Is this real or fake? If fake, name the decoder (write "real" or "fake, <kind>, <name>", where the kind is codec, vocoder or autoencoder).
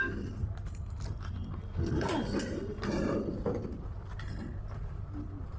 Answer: real